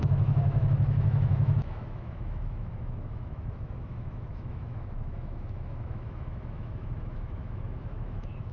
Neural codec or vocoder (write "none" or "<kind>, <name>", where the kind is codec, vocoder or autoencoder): autoencoder, DAC-VAE